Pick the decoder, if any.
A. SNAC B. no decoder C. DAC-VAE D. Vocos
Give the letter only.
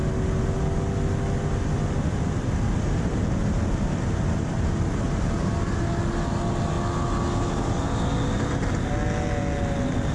B